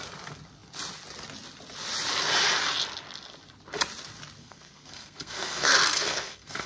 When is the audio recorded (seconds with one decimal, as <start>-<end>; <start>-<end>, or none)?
0.0-4.4

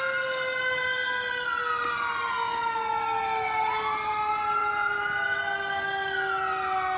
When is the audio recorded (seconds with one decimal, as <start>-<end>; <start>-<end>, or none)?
0.0-7.0

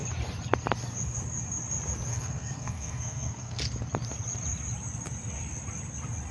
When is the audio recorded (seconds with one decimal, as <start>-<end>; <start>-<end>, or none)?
0.0-2.1; 3.6-6.3